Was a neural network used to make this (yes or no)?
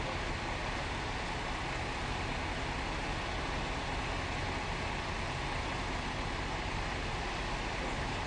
no